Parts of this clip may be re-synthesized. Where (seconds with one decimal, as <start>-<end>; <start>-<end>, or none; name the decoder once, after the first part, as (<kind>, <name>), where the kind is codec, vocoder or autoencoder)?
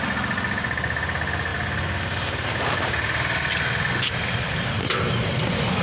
none